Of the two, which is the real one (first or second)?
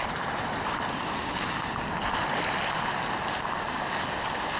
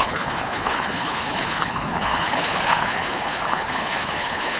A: first